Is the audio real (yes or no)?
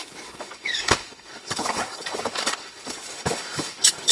no